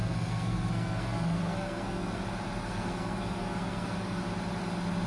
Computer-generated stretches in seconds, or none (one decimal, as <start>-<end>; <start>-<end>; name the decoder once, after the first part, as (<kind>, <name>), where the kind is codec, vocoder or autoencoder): 0.0-2.2 (codec, SNAC); 2.6-4.2